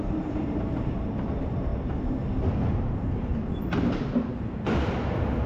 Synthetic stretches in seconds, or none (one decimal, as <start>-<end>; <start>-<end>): 0.0-1.7; 2.5-5.5